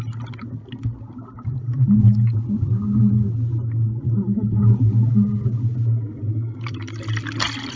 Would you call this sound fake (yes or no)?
no